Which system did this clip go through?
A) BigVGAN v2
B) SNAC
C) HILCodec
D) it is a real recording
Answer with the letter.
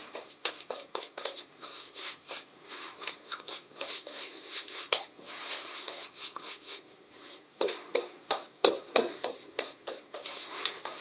B